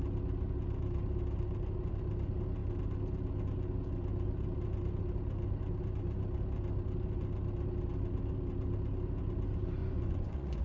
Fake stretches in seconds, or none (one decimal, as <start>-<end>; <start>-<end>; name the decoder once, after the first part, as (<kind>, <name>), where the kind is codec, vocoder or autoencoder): 9.8-10.6 (vocoder, Vocos)